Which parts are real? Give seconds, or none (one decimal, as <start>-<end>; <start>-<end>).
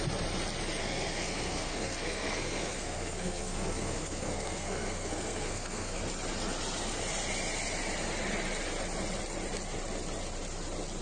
0.0-0.8; 6.0-11.0